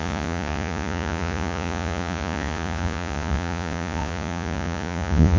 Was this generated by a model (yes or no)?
yes